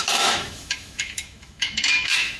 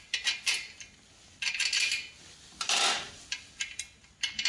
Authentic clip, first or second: second